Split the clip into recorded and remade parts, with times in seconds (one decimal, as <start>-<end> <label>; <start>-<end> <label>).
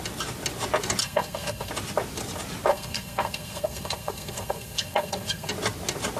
0.0-1.0 recorded; 1.0-1.7 remade; 1.7-2.7 recorded; 2.7-5.5 remade; 5.5-6.2 recorded